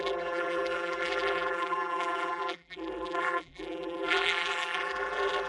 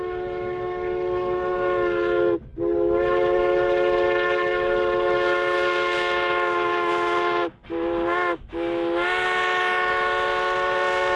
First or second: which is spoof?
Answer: first